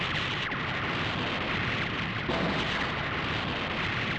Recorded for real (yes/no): yes